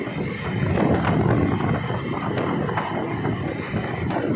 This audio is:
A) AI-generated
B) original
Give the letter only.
B